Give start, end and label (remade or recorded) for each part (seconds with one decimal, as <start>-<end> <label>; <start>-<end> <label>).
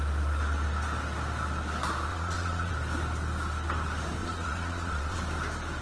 0.0-2.1 recorded; 2.1-2.7 remade; 2.7-4.2 recorded; 4.2-5.2 remade; 5.2-5.8 recorded